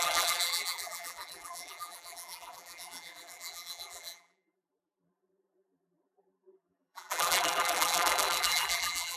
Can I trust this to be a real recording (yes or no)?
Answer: no